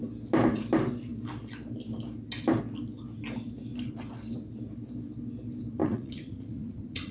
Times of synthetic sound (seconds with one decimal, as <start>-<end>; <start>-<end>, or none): 5.8-7.1